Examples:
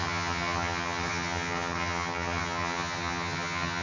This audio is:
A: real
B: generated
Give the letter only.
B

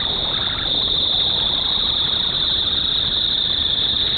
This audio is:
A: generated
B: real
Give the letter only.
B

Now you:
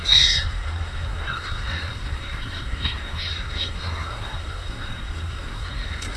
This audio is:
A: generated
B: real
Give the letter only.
A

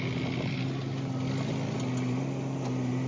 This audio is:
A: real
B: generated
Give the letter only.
A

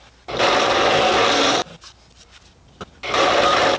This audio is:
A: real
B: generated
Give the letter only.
A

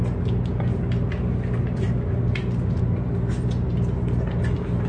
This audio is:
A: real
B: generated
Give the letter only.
A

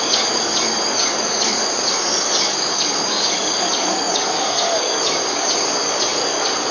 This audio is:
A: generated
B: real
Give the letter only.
A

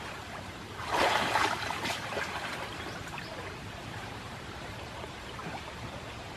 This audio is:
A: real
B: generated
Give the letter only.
B